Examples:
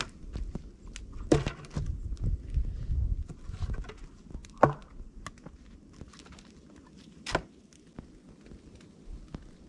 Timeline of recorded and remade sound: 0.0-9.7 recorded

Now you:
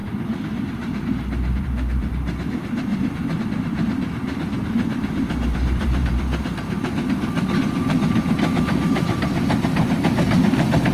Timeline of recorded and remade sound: 0.0-1.6 recorded; 1.6-2.9 remade; 2.9-3.4 recorded; 3.4-10.9 remade

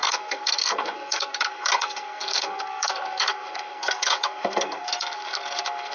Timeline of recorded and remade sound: 0.0-5.9 remade